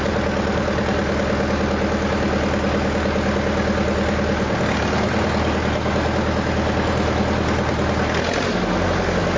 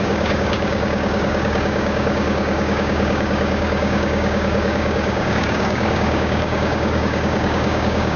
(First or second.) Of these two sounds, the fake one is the second